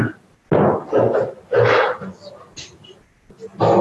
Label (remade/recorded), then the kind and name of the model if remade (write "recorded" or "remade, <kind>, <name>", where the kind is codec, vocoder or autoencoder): recorded